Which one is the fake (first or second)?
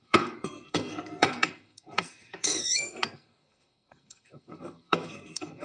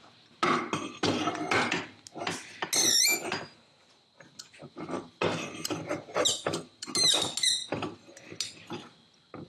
first